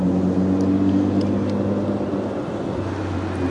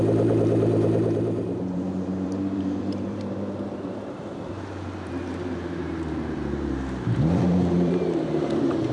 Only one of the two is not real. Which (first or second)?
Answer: second